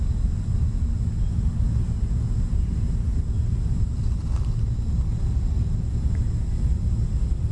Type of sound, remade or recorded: recorded